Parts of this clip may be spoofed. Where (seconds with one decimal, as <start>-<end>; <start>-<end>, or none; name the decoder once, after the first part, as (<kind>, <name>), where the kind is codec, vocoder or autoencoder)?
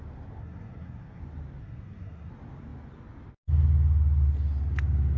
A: 0.4-1.2 (codec, SNAC); 1.6-2.3